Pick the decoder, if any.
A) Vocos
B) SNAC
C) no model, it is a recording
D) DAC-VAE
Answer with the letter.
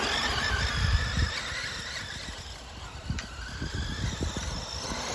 C